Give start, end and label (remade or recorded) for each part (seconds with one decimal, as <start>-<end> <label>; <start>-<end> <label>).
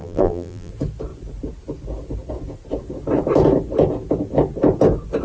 0.0-0.7 remade; 0.7-5.2 recorded